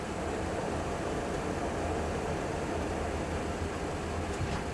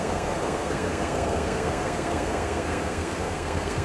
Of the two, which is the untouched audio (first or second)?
first